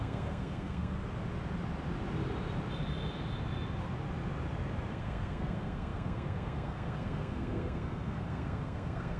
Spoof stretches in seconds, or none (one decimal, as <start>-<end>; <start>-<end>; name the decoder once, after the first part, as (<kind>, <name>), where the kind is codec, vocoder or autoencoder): 0.0-1.0 (codec, SNAC); 4.9-9.2